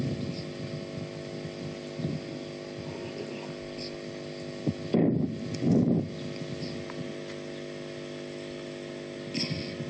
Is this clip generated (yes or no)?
no